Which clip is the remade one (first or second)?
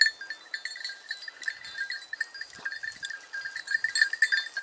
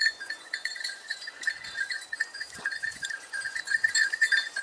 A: second